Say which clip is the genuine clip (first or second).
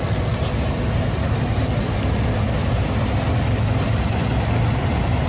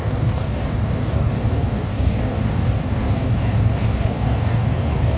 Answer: first